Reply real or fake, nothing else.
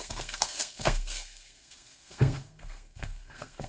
fake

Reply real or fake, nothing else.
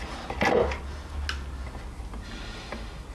real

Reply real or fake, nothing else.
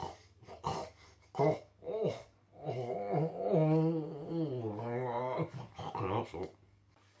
fake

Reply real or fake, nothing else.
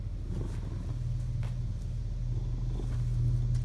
real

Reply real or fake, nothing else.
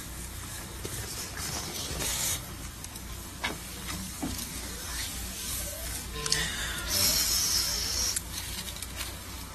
fake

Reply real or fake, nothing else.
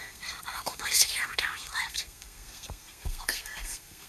fake